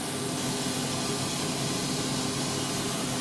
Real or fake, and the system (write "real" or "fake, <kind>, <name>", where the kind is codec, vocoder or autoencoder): real